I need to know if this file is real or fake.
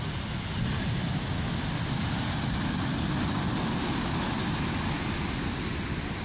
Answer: real